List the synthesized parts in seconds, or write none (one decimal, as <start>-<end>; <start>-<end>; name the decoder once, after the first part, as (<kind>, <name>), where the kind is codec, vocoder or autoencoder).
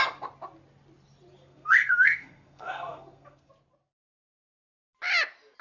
1.4-3.5 (codec, SNAC)